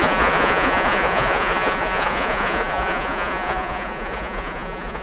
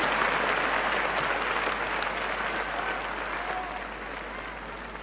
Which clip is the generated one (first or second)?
first